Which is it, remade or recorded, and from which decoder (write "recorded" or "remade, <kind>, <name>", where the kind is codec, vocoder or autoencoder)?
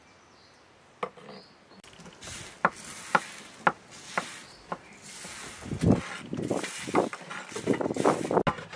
recorded